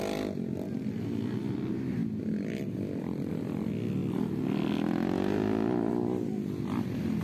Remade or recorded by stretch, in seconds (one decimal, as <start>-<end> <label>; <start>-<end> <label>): 0.0-7.2 recorded